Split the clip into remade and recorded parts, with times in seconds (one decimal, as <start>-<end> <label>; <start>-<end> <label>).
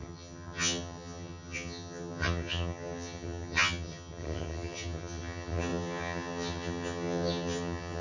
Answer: 0.0-8.0 remade